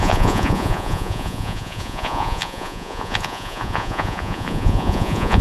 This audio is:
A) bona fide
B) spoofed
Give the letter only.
B